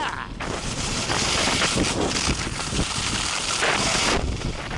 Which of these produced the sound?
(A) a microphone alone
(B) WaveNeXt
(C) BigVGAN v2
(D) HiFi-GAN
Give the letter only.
A